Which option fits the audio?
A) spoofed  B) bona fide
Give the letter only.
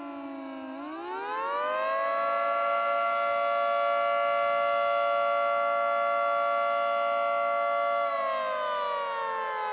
B